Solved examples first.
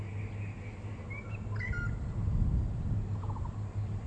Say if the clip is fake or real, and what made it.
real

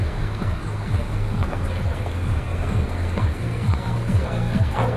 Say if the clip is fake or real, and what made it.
fake, codec, SNAC